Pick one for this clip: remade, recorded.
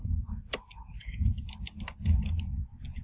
remade